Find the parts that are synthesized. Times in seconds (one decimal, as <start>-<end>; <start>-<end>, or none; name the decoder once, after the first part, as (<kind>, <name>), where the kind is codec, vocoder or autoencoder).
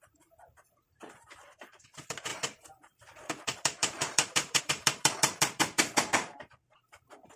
0.0-7.4 (vocoder, BigVGAN v2)